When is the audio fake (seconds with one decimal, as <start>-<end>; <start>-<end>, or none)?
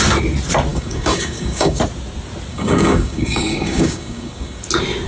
0.7-1.8; 2.5-4.6